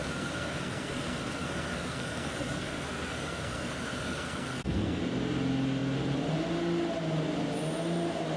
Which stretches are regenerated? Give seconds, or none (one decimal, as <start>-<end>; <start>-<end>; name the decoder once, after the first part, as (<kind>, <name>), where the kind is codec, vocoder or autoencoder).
0.0-5.0 (codec, SNAC)